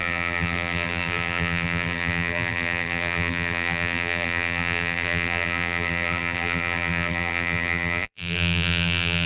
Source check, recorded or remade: remade